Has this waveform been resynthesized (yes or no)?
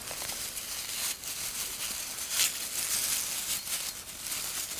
no